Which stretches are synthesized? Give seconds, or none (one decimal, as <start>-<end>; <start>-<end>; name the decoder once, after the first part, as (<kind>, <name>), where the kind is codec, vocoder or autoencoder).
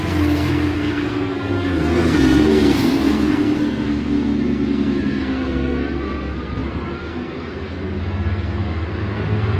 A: 0.0-9.6 (codec, SNAC)